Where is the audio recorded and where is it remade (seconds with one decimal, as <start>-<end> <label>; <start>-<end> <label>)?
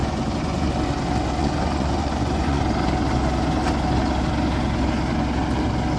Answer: 0.0-0.7 remade; 0.7-1.4 recorded; 1.4-2.6 remade; 2.6-6.0 recorded